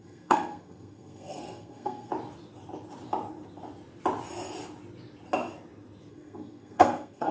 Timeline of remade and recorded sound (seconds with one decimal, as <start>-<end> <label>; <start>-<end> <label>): 0.0-2.1 remade; 2.1-6.1 recorded; 6.1-7.3 remade